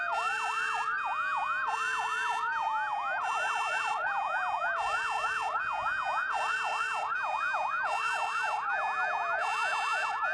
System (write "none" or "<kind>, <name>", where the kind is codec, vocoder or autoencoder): none